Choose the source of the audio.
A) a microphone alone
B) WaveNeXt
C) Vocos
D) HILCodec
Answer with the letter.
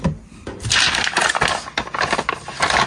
A